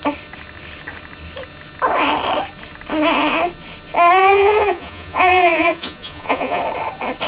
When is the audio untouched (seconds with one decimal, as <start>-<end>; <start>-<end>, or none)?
0.0-4.2; 6.6-7.3